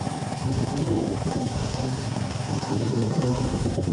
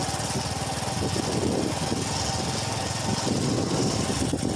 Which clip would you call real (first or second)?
second